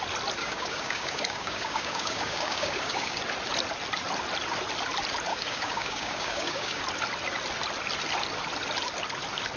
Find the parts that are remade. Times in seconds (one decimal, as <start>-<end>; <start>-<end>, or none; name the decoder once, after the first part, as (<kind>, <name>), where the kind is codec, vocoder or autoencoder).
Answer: 0.4-3.2 (codec, DAC); 5.3-6.8